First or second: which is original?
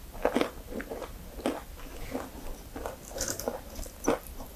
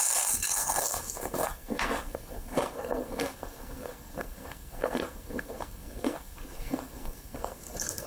first